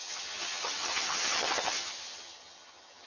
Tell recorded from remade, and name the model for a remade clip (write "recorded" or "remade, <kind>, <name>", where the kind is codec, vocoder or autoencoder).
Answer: remade, vocoder, HiFi-GAN